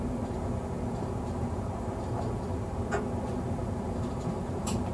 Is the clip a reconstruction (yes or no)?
yes